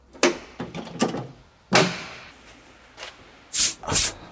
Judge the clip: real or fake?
real